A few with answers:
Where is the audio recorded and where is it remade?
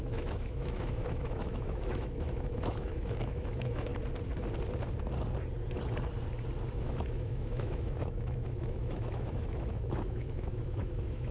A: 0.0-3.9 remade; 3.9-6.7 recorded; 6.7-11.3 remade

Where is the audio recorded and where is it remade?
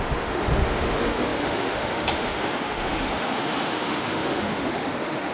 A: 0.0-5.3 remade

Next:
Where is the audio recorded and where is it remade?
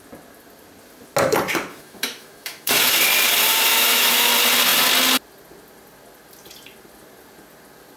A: 0.0-1.7 recorded; 1.7-3.0 remade; 3.0-3.7 recorded; 3.7-4.3 remade; 4.3-8.0 recorded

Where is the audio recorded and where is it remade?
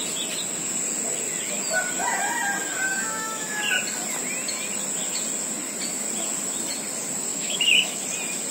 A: 0.0-2.9 recorded; 2.9-3.6 remade; 3.6-7.3 recorded; 7.3-8.0 remade; 8.0-8.5 recorded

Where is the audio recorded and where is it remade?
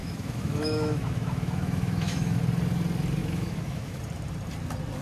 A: 0.0-2.4 remade; 2.4-3.2 recorded; 3.2-4.0 remade; 4.0-5.0 recorded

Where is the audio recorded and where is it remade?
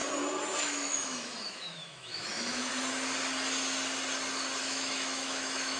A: 0.0-0.6 recorded; 0.6-2.7 remade; 2.7-4.6 recorded; 4.6-5.8 remade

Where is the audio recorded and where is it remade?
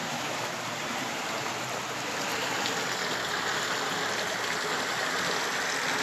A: 0.0-0.6 remade; 0.6-6.0 recorded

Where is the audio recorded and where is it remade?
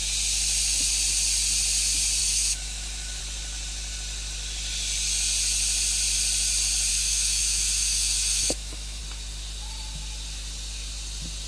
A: 0.0-2.2 recorded; 2.2-3.2 remade; 3.2-6.9 recorded; 6.9-9.0 remade; 9.0-11.5 recorded